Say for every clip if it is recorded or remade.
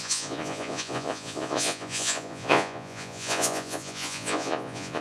remade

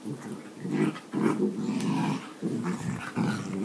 recorded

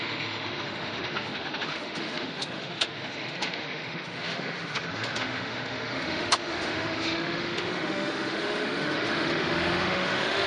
remade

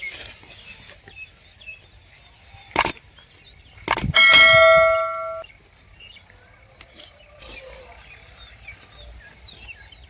recorded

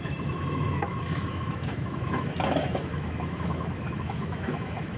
remade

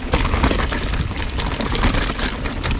remade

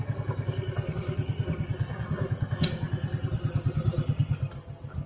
recorded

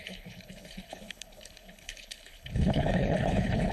remade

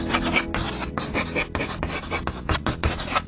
recorded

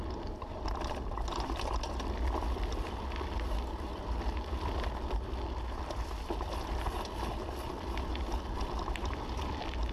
recorded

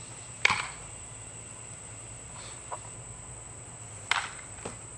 remade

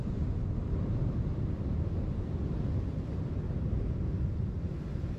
recorded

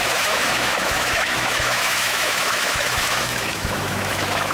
remade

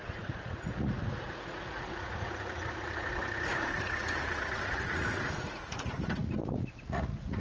remade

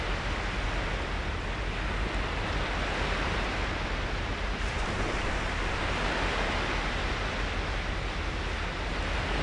recorded